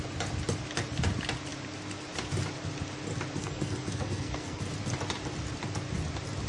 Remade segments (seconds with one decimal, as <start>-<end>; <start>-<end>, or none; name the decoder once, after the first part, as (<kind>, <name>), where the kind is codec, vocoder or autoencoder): 3.4-4.6 (codec, SNAC)